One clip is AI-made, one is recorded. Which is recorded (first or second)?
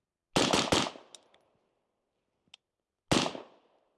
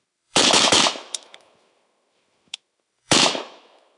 first